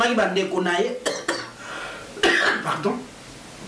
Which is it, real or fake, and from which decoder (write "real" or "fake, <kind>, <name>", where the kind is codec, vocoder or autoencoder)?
real